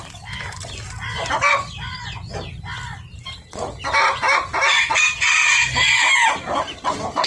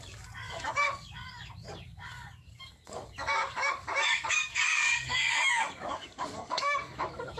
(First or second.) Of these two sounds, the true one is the first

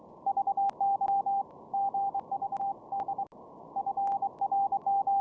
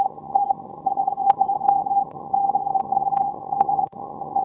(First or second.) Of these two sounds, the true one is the first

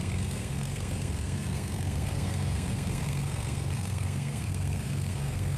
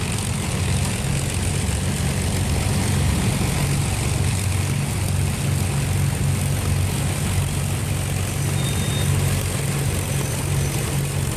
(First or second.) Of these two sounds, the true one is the second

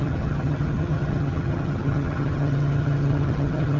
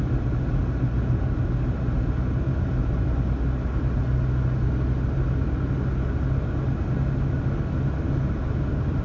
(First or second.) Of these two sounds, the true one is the second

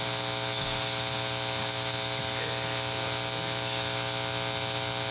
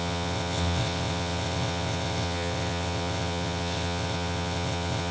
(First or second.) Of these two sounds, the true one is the first